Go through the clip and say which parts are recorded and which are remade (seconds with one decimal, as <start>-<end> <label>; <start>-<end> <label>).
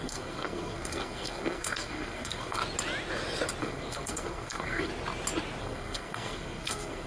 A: 0.0-2.6 remade; 2.6-3.6 recorded; 3.6-4.9 remade; 4.9-5.6 recorded; 5.6-7.1 remade